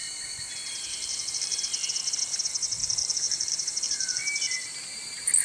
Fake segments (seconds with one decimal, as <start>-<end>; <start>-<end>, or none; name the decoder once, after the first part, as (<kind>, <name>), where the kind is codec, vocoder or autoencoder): 0.0-0.5 (vocoder, BigVGAN v2); 0.9-1.6; 2.8-4.8